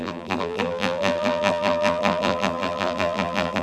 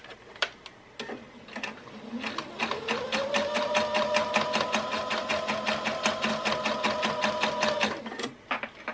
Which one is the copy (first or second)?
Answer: first